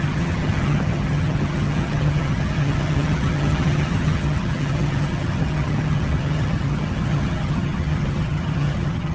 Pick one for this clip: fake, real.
fake